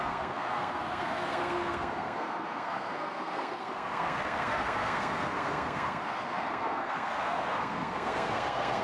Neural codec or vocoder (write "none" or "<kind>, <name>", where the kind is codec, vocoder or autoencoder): codec, SNAC